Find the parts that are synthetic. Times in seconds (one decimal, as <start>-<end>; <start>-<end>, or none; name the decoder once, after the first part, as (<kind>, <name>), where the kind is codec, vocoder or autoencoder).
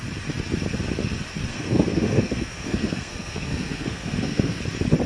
1.5-4.6 (codec, SNAC)